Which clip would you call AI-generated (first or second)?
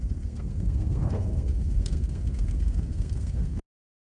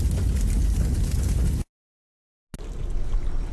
first